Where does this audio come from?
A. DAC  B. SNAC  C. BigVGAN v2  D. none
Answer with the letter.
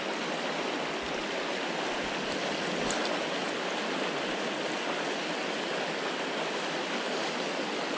D